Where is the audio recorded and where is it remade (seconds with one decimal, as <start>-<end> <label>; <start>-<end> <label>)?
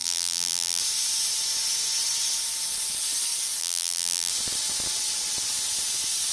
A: 0.0-0.8 remade; 0.8-3.6 recorded; 3.6-4.3 remade; 4.3-6.3 recorded